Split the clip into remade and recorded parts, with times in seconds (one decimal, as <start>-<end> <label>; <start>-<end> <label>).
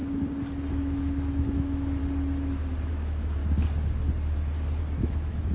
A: 0.0-0.7 recorded; 0.7-2.0 remade; 2.0-2.9 recorded; 2.9-3.4 remade; 3.4-4.8 recorded; 4.8-5.5 remade